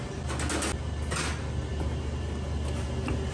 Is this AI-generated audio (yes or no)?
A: no